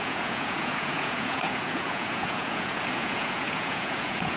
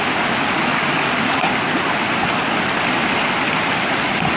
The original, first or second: second